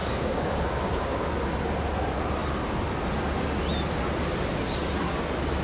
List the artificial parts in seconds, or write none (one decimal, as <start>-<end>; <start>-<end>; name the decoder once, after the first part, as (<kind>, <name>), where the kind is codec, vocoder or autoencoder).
0.0-1.3 (codec, DAC)